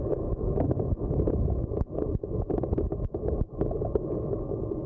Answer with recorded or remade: remade